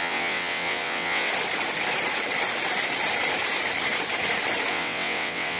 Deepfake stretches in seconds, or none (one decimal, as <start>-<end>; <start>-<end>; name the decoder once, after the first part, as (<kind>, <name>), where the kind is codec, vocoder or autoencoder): 0.0-1.3 (vocoder, WaveNeXt); 4.7-5.6